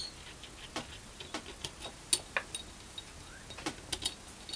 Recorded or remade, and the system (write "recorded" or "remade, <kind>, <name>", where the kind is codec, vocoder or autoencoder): recorded